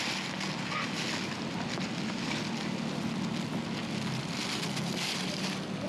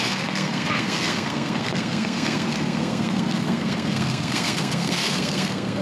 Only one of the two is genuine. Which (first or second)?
first